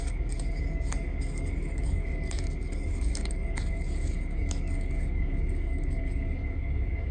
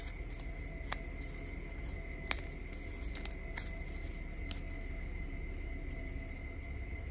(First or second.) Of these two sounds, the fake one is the first